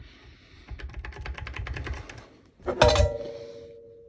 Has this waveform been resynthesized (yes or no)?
no